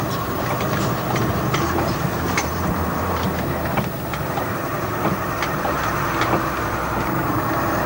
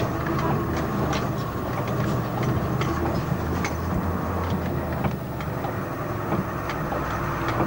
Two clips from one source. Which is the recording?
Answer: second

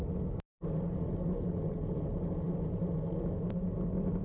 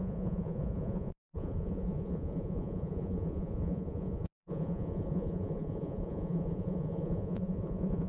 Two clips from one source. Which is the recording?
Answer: first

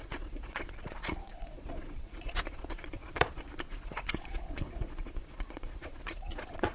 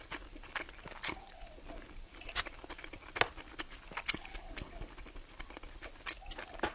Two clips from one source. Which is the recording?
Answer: second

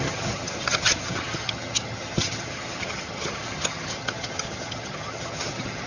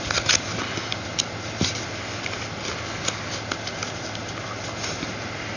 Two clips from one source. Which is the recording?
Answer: second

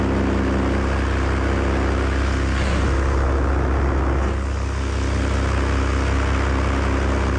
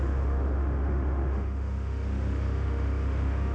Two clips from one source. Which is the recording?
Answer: first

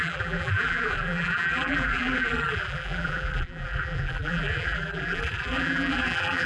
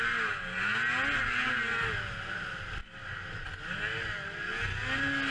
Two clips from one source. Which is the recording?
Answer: second